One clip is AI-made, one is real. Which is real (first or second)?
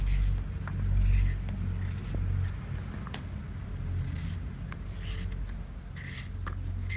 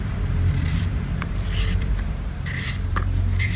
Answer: first